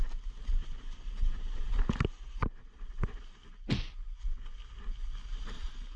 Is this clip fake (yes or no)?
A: no